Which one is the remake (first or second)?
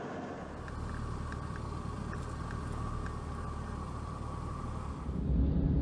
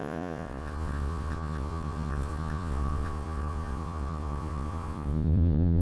second